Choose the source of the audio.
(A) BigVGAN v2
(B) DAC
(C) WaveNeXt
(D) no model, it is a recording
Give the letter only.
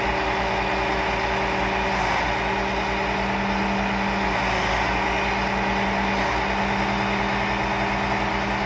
D